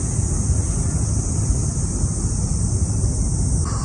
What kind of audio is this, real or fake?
real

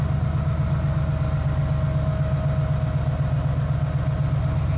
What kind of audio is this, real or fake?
real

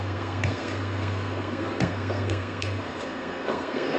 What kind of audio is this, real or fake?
fake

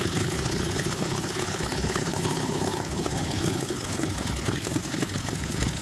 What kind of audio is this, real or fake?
fake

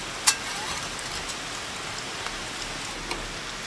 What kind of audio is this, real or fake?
real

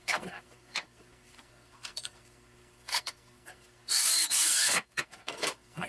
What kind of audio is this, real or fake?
fake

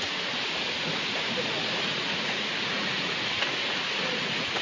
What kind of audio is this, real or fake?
fake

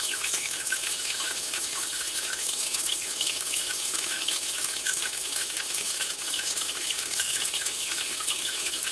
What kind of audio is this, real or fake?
fake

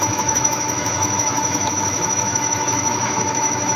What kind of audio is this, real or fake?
fake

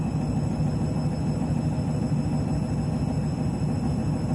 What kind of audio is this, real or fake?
real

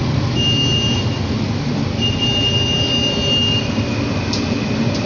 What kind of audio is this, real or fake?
real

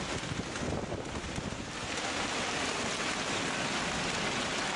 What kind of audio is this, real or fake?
real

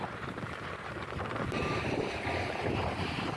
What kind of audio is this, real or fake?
fake